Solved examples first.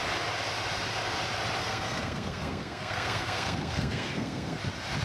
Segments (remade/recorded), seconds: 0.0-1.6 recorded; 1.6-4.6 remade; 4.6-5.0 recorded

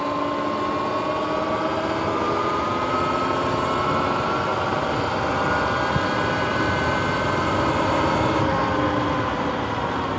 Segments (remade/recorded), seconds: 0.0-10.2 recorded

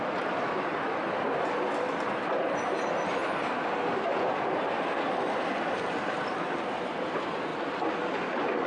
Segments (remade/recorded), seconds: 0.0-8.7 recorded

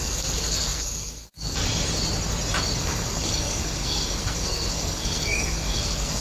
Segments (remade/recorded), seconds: 0.0-1.6 remade; 1.6-2.8 recorded; 2.8-6.2 remade

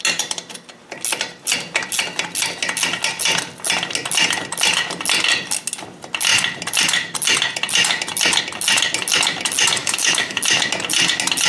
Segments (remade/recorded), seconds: 0.0-9.8 recorded; 9.8-10.4 remade; 10.4-11.5 recorded

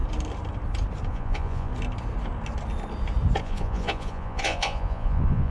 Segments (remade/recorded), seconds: 0.0-1.1 recorded; 1.1-1.7 remade; 1.7-3.4 recorded; 3.4-5.5 remade

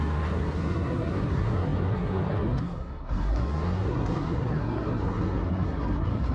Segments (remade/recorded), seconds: 0.0-6.3 remade